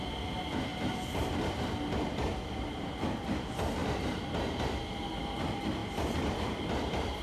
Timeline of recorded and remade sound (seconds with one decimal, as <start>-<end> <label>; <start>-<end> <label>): 0.0-3.8 recorded; 3.8-4.8 remade; 4.8-7.2 recorded